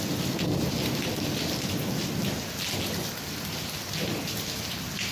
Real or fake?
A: real